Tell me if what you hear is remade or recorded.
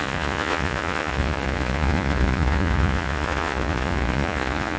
remade